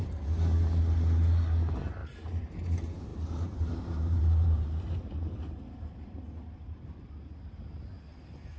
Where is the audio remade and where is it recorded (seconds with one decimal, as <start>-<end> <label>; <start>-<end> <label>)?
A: 0.0-2.0 recorded; 2.0-2.5 remade; 2.5-3.1 recorded; 3.1-5.7 remade; 5.7-8.6 recorded